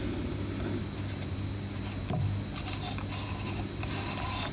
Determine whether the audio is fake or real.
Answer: real